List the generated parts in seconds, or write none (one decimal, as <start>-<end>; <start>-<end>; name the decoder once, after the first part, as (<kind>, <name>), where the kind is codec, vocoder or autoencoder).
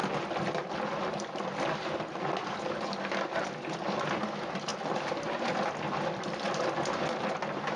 none